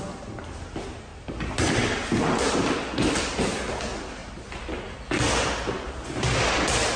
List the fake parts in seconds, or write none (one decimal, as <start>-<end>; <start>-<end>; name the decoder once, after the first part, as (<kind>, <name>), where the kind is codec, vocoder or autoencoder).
none